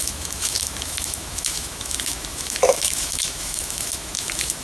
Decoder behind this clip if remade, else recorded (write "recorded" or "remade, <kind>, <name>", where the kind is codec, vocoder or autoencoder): remade, autoencoder, DAC-VAE